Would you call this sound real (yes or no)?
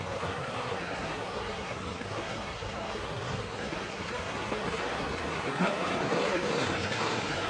no